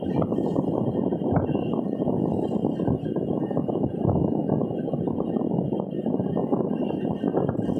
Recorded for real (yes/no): yes